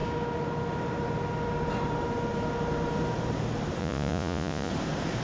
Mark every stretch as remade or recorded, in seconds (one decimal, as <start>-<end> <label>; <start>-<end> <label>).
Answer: 0.0-3.8 recorded; 3.8-4.7 remade; 4.7-5.2 recorded